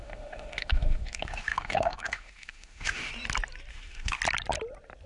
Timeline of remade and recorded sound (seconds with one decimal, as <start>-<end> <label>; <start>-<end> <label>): 0.0-3.1 remade; 3.1-3.7 recorded; 3.7-4.2 remade; 4.2-5.1 recorded